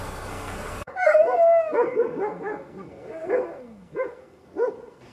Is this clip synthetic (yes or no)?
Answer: yes